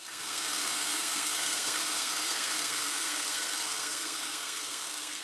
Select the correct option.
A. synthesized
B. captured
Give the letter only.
A